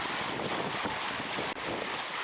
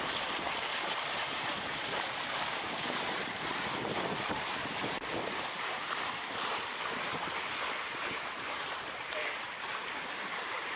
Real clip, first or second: first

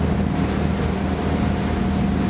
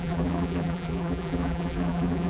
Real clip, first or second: first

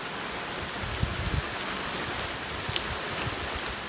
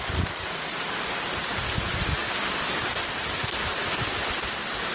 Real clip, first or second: first